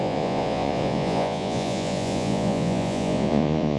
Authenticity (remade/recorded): remade